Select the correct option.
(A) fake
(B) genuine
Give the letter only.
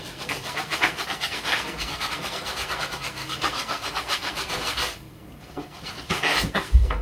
A